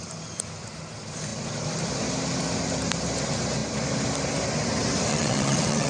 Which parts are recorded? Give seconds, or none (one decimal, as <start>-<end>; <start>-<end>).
0.0-5.1